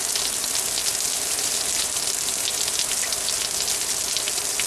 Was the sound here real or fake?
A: real